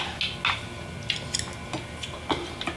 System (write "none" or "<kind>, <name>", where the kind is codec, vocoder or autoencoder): none